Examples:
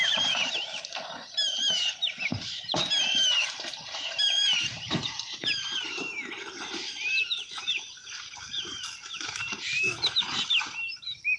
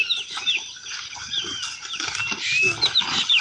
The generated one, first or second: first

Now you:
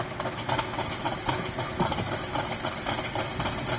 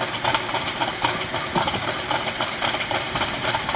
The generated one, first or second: second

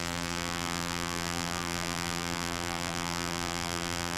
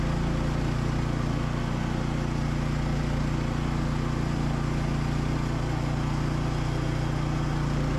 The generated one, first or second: first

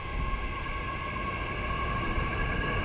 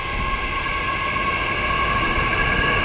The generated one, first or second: first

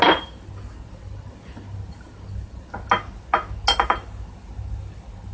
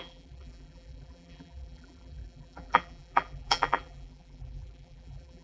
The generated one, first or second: second